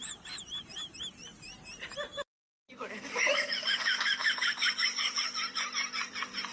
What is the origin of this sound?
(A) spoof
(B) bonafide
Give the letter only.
A